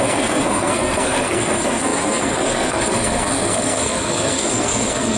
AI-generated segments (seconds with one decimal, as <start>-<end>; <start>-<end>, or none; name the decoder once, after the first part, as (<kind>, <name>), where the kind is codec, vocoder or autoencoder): 0.0-5.2 (codec, SNAC)